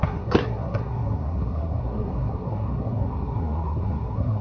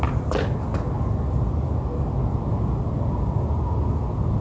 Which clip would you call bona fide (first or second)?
second